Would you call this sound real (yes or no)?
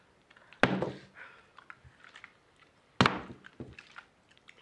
yes